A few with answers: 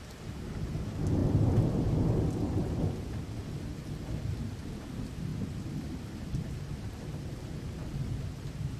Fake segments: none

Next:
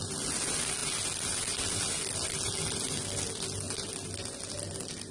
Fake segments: none